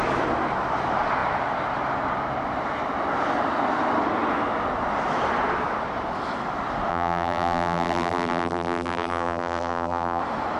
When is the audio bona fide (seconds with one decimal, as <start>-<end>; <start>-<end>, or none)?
0.0-6.9; 10.2-10.6